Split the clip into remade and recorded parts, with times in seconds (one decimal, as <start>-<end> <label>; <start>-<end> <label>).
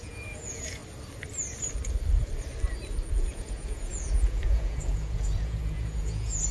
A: 0.0-0.8 remade; 0.8-3.2 recorded; 3.2-6.5 remade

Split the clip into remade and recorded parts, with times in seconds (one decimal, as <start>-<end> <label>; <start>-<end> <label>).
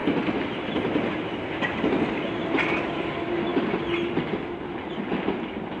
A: 0.0-5.8 recorded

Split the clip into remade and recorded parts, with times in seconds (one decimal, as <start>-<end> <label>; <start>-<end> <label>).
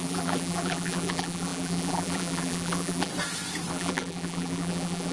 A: 0.0-3.1 remade; 3.1-3.7 recorded; 3.7-5.1 remade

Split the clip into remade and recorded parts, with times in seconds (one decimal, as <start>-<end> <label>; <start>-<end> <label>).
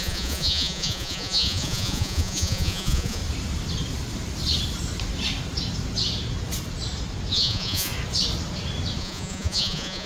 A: 0.0-3.2 remade; 3.2-7.3 recorded; 7.3-7.9 remade; 7.9-9.0 recorded; 9.0-10.1 remade